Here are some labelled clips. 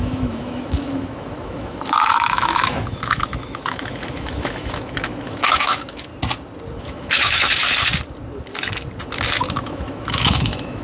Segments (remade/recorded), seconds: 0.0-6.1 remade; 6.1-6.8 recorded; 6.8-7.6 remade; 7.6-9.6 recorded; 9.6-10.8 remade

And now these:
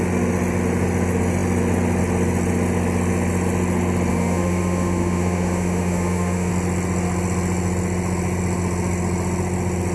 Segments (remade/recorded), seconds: 0.0-4.1 recorded; 4.1-6.5 remade; 6.5-9.9 recorded

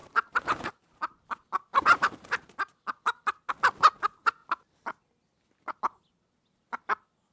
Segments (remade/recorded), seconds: 0.0-0.7 remade; 0.7-1.7 recorded; 1.7-3.5 remade; 3.5-7.3 recorded

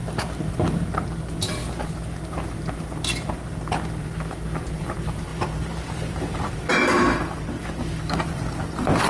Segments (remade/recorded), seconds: 0.0-1.6 remade; 1.6-2.2 recorded; 2.2-9.1 remade